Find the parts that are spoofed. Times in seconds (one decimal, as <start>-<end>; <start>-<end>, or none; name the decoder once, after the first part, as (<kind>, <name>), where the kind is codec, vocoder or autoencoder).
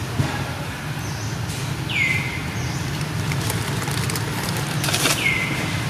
none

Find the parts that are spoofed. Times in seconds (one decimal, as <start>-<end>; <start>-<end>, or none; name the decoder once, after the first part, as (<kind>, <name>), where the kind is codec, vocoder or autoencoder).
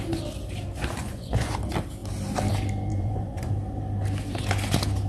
1.0-1.5 (vocoder, Vocos); 2.9-3.5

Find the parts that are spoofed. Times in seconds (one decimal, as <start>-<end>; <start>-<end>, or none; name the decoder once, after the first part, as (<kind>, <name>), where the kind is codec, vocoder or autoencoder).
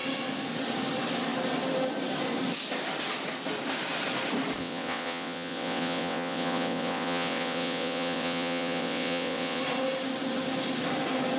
4.6-9.6 (vocoder, WaveNeXt)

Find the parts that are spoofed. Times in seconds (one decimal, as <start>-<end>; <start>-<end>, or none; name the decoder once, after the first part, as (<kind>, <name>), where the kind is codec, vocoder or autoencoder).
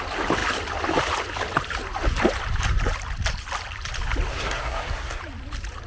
4.3-5.2 (codec, SNAC)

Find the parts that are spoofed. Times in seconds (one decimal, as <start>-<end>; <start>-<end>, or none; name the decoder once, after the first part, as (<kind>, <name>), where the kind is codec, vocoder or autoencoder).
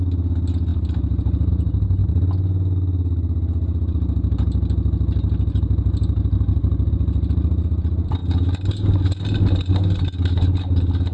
none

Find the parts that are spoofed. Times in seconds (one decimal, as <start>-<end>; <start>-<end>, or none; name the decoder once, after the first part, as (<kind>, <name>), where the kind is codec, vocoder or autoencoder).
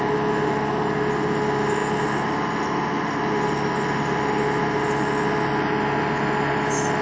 none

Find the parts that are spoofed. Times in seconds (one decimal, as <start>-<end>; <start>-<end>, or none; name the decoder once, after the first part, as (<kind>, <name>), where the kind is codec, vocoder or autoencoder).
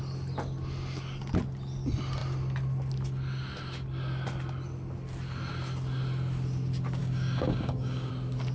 7.0-8.1 (codec, DAC)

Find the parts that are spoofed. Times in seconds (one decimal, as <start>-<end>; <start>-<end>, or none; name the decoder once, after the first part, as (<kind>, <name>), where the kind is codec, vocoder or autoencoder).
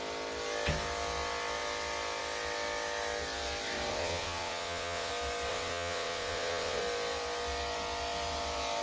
3.9-5.1 (vocoder, WaveNeXt); 5.5-6.8